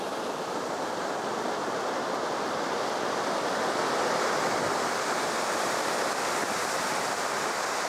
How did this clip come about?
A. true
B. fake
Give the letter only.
B